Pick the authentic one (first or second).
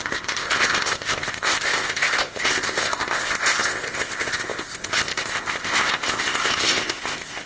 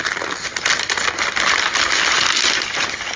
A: second